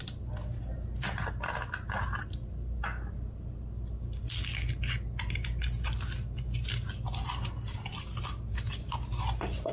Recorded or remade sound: recorded